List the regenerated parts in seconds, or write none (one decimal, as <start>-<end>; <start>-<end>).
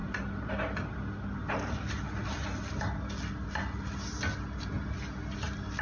none